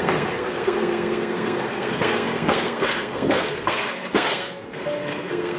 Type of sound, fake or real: fake